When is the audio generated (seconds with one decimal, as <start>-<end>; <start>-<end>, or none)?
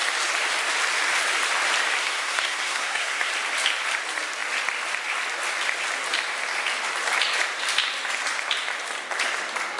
2.0-3.3